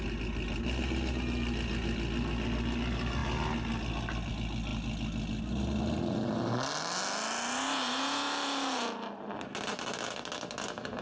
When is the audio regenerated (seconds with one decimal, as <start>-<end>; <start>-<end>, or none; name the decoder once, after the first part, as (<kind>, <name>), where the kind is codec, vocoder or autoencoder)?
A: none